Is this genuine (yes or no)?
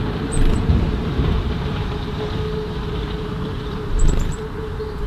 no